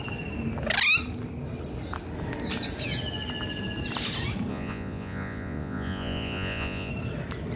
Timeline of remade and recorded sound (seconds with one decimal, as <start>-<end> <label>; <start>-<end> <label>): 0.0-4.5 recorded; 4.5-6.9 remade; 6.9-7.6 recorded